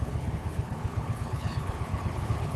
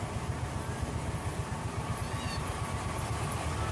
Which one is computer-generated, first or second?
first